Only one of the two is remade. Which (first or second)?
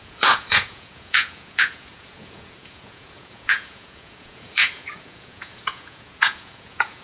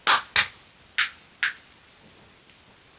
first